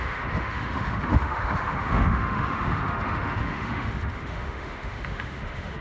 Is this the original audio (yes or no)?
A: no